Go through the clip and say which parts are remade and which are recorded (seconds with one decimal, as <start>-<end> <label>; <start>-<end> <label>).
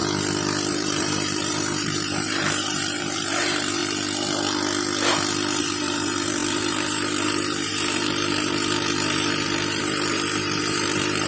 0.0-0.7 recorded; 0.7-3.8 remade; 3.8-5.6 recorded; 5.6-11.3 remade